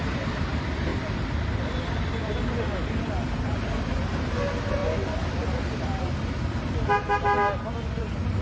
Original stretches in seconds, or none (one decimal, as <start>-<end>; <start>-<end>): 0.0-8.4